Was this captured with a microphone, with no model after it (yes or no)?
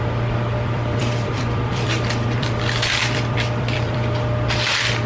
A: no